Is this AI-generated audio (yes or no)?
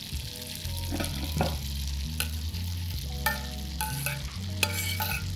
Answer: no